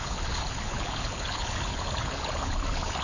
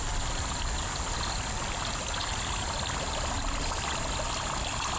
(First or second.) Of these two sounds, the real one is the second